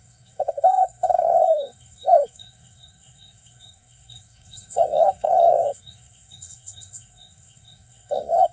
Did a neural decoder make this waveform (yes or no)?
yes